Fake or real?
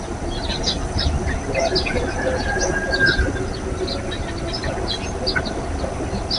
real